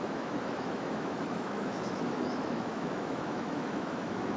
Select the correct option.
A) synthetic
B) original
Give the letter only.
A